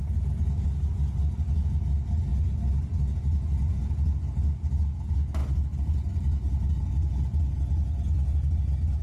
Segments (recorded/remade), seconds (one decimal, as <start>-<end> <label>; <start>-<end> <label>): 0.0-5.4 recorded; 5.4-6.9 remade; 6.9-9.0 recorded